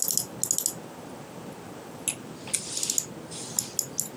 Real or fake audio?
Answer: real